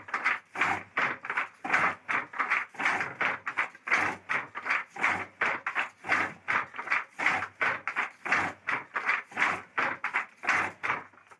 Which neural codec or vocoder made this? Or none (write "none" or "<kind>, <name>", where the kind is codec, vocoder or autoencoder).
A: none